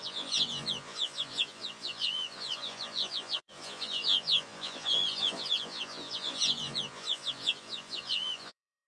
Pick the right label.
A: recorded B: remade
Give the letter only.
B